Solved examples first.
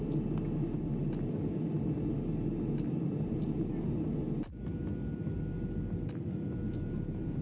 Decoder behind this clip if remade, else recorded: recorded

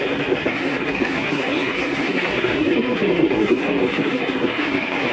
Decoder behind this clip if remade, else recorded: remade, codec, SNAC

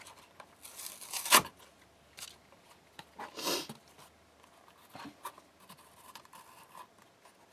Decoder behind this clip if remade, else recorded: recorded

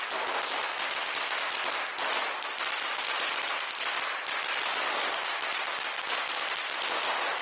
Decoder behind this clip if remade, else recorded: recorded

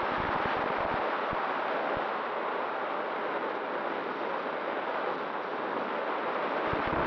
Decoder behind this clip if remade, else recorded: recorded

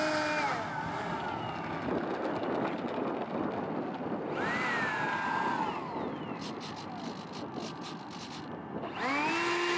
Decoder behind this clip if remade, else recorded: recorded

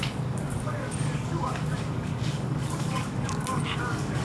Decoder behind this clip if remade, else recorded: remade, codec, DAC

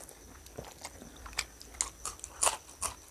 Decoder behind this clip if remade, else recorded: recorded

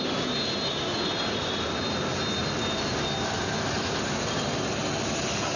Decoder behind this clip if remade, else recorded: recorded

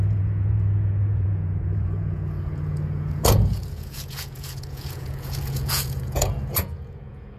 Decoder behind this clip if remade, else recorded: remade, vocoder, Vocos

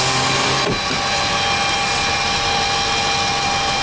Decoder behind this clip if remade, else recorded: recorded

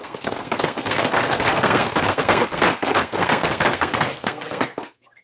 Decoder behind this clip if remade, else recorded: remade, codec, SNAC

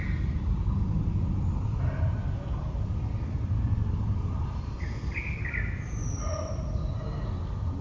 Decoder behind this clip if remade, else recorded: recorded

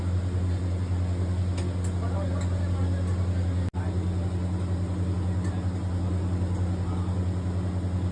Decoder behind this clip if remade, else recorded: recorded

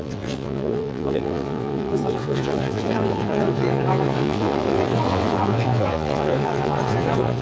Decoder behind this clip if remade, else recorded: remade, vocoder, WaveNeXt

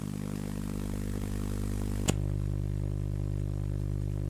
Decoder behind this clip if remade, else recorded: recorded